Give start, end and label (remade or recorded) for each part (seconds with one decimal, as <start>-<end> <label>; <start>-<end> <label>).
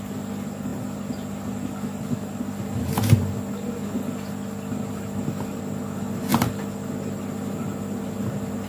0.0-8.7 recorded